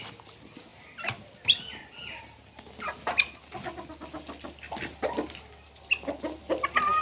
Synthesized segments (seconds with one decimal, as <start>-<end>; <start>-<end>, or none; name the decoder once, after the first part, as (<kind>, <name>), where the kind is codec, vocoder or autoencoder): none